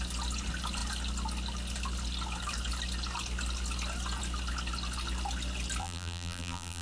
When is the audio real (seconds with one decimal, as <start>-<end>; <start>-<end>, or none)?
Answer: 0.0-5.8